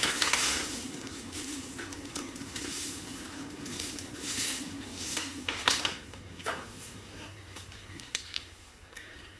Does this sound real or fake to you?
fake